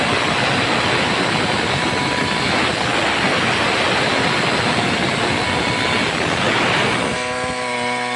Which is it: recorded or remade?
recorded